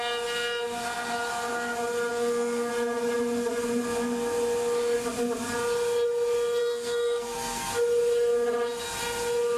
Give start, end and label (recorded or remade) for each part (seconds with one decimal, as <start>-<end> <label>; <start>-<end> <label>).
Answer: 0.0-2.1 recorded; 2.1-2.7 remade; 2.7-6.6 recorded; 6.6-7.7 remade; 7.7-9.6 recorded